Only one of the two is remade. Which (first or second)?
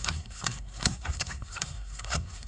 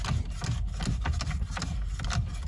first